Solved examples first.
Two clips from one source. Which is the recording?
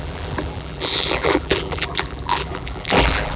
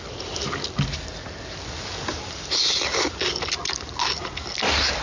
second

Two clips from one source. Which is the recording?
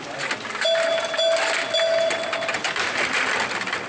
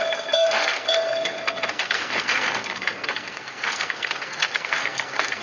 first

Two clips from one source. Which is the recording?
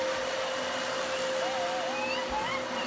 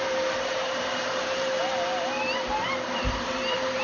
first